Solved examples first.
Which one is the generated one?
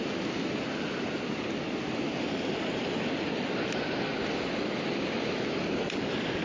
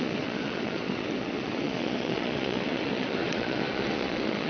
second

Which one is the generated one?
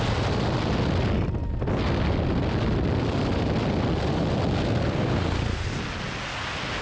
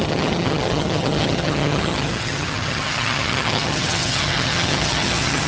second